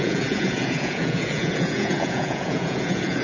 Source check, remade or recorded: remade